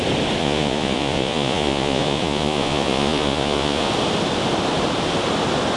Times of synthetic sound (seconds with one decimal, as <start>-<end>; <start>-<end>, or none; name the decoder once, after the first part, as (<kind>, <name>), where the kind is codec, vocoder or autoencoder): 0.4-3.9 (vocoder, Vocos)